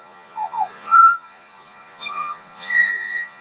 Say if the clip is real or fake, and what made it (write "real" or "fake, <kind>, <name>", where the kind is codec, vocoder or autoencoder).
fake, vocoder, Vocos